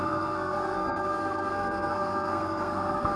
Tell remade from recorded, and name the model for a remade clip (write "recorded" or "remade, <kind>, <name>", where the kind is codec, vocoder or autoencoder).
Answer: remade, codec, SNAC